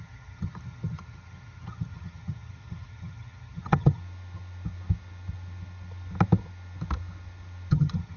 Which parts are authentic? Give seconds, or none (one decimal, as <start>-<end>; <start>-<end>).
4.0-7.7